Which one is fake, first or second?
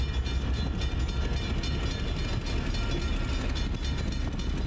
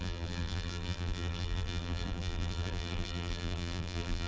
second